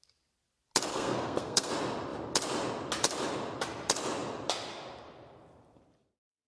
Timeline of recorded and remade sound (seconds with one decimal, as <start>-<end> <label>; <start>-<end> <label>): 0.0-0.9 recorded; 0.9-1.7 remade; 1.7-6.5 recorded